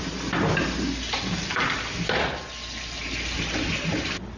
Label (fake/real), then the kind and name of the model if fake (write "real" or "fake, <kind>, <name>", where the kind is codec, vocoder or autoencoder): real